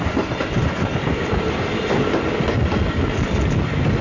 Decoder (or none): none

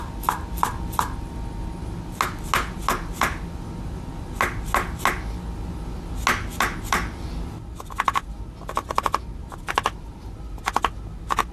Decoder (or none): none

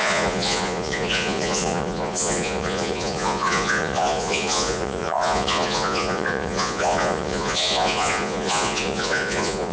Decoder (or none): vocoder, Vocos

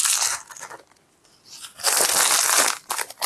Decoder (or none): none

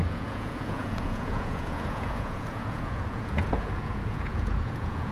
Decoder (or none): vocoder, Vocos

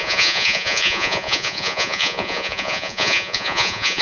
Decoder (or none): vocoder, Vocos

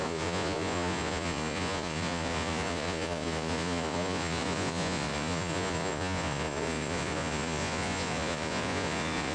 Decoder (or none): vocoder, Vocos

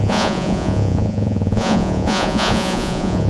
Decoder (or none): vocoder, Vocos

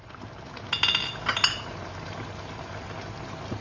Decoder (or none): none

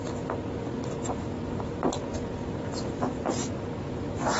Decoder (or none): none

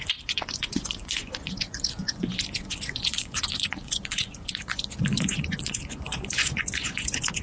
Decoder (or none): vocoder, Vocos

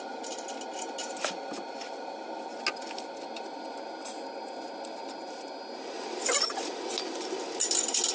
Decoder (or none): none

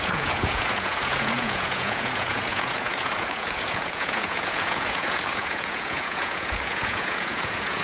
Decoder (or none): vocoder, Vocos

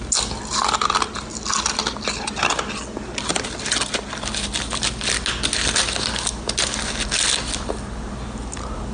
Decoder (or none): none